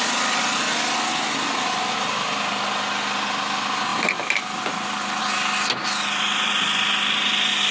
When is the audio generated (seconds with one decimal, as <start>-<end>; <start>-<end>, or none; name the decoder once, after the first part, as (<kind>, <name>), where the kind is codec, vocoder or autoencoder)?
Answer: none